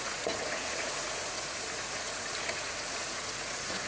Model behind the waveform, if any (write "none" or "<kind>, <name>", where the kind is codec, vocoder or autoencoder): vocoder, Vocos